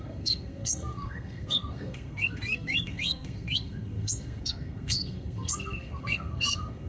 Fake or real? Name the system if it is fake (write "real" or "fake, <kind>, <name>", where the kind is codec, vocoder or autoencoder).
fake, codec, SNAC